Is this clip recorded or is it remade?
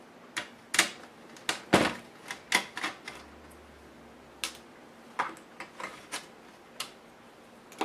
recorded